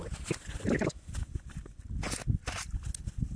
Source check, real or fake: real